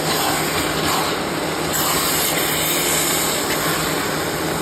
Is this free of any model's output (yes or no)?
yes